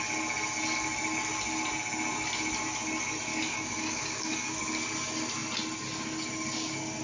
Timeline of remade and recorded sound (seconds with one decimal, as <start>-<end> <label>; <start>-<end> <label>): 0.0-3.3 recorded; 3.3-4.6 remade; 4.6-7.0 recorded